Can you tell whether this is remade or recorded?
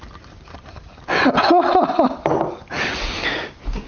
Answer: recorded